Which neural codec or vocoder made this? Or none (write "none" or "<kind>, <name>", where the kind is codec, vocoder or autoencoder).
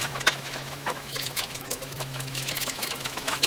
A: autoencoder, DAC-VAE